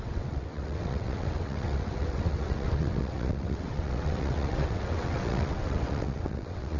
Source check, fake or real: fake